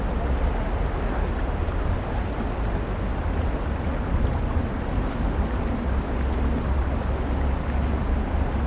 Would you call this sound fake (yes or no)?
no